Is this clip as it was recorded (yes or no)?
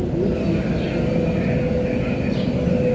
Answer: yes